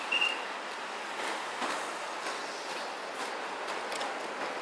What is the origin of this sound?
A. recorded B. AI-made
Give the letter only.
A